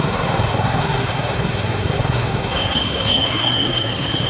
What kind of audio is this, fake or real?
fake